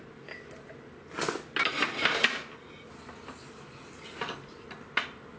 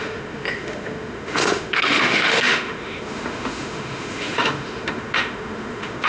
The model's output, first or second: second